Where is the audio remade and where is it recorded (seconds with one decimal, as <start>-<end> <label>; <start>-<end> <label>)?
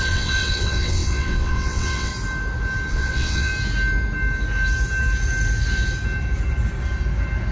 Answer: 0.0-2.1 remade; 2.1-2.9 recorded; 2.9-3.5 remade; 3.5-7.5 recorded